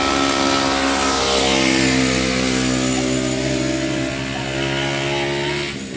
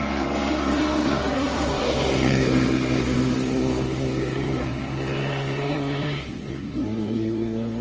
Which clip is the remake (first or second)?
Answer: second